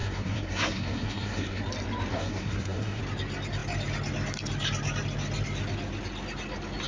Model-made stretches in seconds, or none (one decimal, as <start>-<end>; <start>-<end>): 0.0-1.6; 2.1-3.0